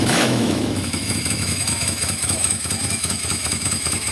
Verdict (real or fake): fake